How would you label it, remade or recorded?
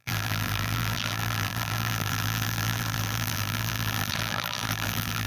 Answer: remade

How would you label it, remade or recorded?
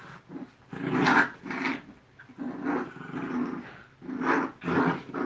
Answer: recorded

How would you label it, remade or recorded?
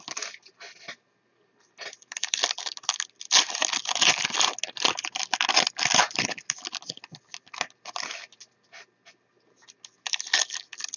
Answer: recorded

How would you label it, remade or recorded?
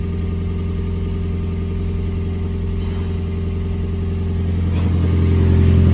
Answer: recorded